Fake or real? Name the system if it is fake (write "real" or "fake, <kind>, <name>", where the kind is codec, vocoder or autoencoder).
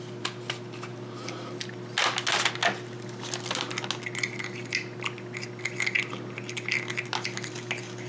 real